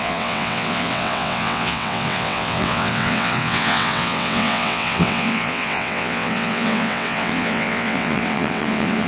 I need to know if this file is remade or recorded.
remade